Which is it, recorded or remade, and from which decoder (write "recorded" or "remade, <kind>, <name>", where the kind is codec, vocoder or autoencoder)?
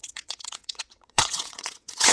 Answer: remade, vocoder, WaveNeXt